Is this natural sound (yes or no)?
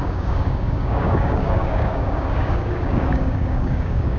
no